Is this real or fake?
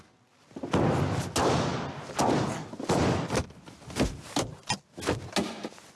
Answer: real